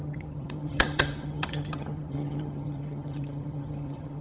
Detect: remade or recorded remade